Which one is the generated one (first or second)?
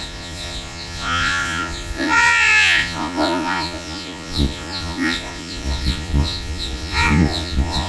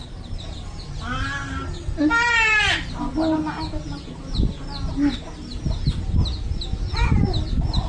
first